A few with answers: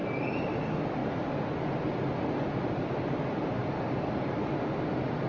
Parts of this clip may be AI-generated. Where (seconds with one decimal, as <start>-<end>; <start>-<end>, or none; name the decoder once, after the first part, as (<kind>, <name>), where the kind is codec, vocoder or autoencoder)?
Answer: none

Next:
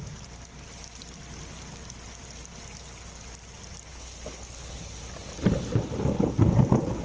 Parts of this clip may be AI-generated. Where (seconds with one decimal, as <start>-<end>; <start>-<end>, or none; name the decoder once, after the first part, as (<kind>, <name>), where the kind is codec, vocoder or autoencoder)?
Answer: 3.9-5.0 (codec, HILCodec)

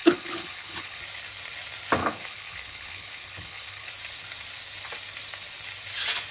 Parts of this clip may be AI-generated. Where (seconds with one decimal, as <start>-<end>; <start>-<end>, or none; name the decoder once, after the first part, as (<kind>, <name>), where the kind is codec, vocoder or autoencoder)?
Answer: 0.0-1.0 (codec, HILCodec); 2.0-3.9